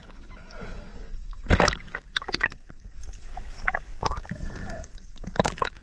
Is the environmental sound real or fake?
fake